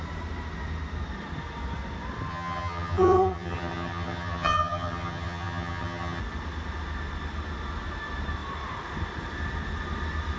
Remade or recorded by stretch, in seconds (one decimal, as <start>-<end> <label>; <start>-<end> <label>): 0.0-2.3 recorded; 2.3-6.2 remade; 6.2-10.4 recorded